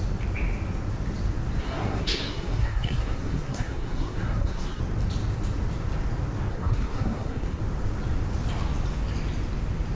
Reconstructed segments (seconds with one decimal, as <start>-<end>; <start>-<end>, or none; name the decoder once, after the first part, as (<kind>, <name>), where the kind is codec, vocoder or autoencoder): 1.6-4.8 (codec, SNAC); 6.5-7.6

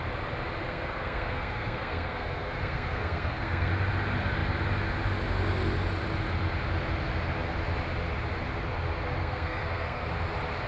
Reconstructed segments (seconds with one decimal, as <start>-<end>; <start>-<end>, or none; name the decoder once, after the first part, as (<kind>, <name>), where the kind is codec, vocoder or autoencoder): 0.6-3.7 (codec, SNAC); 9.2-10.1